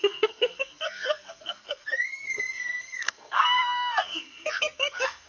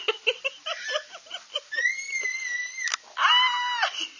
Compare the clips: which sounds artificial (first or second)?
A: first